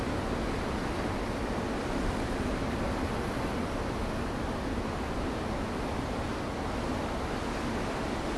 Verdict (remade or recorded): recorded